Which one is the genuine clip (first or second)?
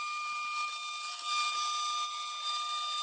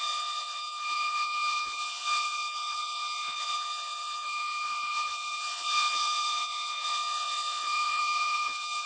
first